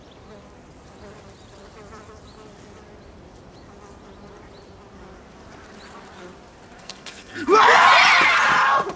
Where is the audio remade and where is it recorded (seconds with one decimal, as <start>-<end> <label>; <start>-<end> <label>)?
0.0-6.8 recorded; 6.8-7.6 remade; 7.6-9.0 recorded